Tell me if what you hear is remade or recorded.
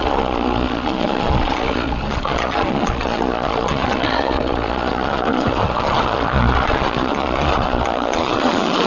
remade